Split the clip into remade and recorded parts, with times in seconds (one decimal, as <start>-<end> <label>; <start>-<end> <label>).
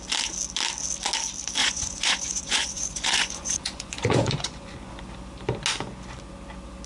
0.0-1.6 recorded; 1.6-4.9 remade; 4.9-6.9 recorded